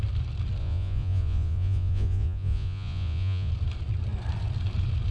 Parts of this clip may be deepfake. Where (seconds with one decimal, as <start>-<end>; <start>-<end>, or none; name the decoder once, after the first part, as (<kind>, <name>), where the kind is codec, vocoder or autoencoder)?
0.6-3.5 (vocoder, Vocos)